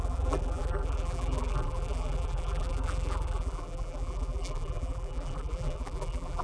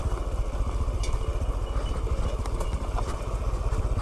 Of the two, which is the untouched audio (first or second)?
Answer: second